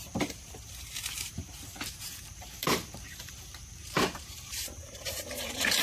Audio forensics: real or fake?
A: fake